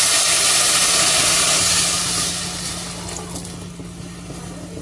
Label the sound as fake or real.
real